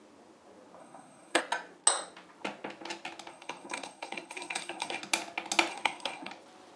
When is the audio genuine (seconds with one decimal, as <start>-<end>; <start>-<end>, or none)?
0.0-0.8; 1.4-3.3; 5.0-5.7; 6.3-6.8